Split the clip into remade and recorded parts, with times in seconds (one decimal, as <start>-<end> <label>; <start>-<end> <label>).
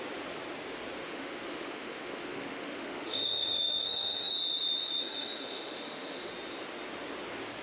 0.0-1.0 recorded; 1.0-4.3 remade; 4.3-5.0 recorded; 5.0-6.3 remade; 6.3-7.6 recorded